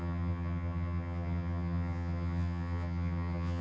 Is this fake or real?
fake